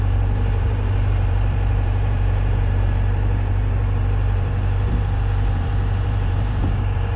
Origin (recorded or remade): remade